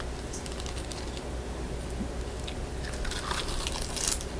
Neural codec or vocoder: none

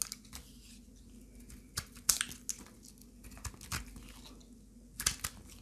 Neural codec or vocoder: none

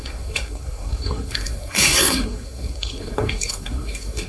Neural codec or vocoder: codec, SNAC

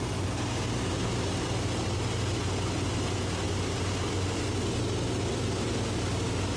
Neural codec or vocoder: none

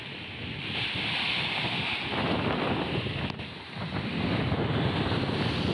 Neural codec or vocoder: none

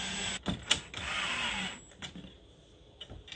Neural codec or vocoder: none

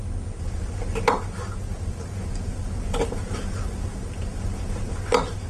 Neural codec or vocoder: none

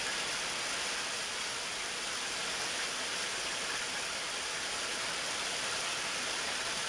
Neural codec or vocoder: none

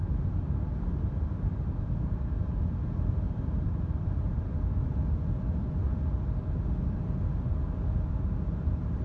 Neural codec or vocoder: none